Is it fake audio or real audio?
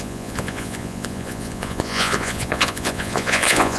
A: fake